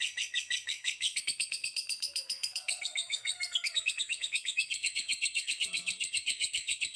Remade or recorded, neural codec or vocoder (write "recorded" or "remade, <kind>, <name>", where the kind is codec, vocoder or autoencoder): remade, codec, SNAC